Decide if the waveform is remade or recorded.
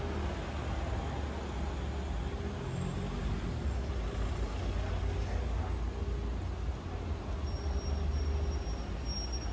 recorded